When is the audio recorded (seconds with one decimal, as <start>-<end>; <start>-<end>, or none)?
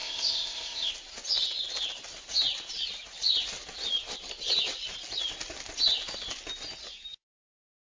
0.9-7.9